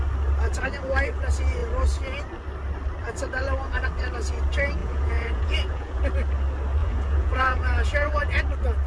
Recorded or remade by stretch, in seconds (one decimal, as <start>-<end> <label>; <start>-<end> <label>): 0.0-4.8 recorded; 4.8-6.0 remade; 6.0-6.8 recorded; 6.8-8.4 remade; 8.4-8.9 recorded